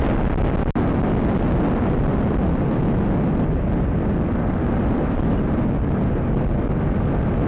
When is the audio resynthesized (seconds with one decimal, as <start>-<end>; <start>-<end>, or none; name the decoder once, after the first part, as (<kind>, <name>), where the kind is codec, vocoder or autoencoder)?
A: none